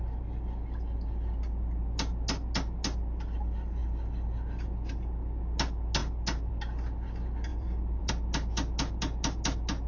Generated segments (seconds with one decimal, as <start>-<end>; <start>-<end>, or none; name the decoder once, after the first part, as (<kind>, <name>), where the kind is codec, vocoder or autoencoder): 7.5-8.1 (vocoder, BigVGAN v2)